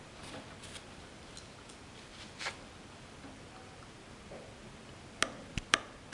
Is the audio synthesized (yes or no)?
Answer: no